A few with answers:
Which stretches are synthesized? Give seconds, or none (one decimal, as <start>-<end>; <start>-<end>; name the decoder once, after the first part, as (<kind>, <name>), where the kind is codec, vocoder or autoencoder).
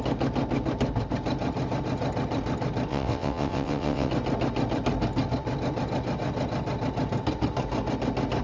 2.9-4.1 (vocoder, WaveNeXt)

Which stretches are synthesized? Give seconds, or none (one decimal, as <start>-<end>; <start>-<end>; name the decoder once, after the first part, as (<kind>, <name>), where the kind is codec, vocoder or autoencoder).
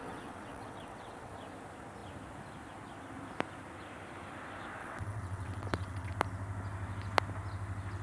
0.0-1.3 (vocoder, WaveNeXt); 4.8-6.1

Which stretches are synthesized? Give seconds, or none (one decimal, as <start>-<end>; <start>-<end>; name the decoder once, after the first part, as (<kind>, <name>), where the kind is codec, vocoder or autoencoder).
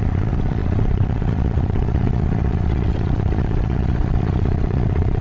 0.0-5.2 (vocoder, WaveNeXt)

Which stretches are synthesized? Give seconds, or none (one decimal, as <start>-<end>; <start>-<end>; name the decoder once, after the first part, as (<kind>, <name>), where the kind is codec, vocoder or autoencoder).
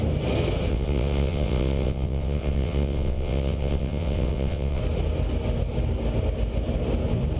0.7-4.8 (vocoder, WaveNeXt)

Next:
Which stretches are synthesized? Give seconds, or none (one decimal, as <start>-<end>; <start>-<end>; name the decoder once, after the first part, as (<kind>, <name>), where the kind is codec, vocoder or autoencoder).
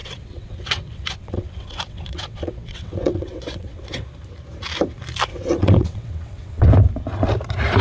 0.0-4.0 (vocoder, WaveNeXt); 5.3-6.7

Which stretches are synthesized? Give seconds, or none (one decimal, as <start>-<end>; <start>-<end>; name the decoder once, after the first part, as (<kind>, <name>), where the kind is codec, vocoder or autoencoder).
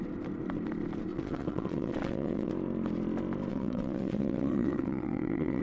1.1-2.5 (vocoder, WaveNeXt); 3.5-5.6